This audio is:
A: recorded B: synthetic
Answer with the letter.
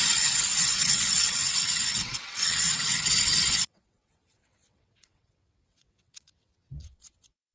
B